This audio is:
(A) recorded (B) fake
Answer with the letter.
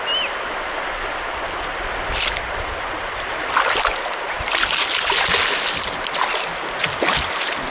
A